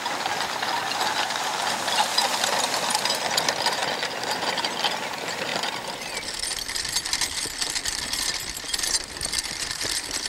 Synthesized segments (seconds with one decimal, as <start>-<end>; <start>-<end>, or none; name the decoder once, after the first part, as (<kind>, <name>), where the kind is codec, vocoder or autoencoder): 0.0-3.8 (vocoder, BigVGAN v2); 4.5-5.5; 9.6-10.3